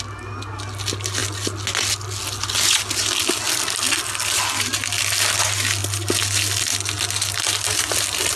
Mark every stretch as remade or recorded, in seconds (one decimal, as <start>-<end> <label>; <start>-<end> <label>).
0.0-8.4 recorded